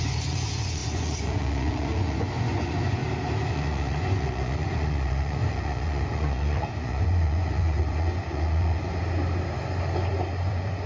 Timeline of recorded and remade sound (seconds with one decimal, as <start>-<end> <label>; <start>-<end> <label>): 0.0-3.0 remade; 3.0-3.5 recorded; 3.5-8.9 remade; 8.9-10.5 recorded; 10.5-10.9 remade